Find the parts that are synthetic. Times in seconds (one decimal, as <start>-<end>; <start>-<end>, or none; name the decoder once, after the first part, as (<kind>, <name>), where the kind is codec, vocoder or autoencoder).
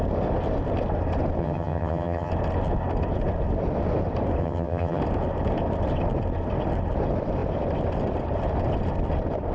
1.4-2.3 (vocoder, HiFi-GAN); 4.4-5.0